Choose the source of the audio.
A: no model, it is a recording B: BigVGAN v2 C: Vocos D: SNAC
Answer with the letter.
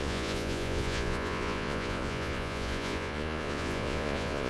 C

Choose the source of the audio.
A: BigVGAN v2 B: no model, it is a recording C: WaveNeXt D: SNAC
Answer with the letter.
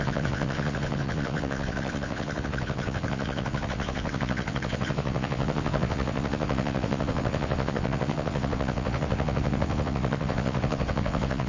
C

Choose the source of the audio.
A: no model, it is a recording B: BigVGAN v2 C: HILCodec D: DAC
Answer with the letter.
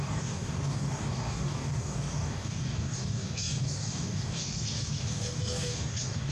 D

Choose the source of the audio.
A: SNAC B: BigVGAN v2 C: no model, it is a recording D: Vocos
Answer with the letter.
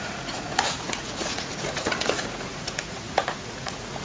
D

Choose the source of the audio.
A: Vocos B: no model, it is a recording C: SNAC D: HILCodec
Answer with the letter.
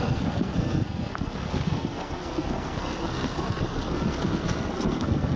C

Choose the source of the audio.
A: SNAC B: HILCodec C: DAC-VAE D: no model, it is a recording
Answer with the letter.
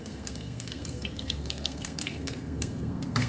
A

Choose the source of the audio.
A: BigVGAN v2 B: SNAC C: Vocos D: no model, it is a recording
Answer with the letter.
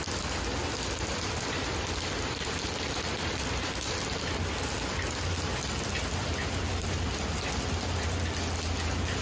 D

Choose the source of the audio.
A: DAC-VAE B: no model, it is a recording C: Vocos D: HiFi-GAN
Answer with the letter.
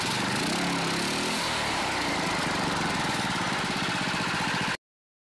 B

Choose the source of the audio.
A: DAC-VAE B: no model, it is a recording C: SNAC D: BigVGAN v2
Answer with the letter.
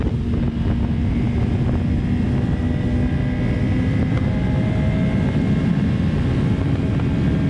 B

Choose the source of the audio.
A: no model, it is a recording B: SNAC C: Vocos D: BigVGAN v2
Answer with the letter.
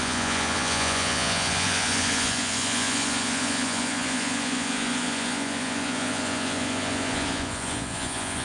C